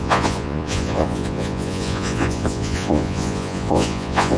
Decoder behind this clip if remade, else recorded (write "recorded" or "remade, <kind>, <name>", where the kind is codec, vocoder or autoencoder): remade, vocoder, Vocos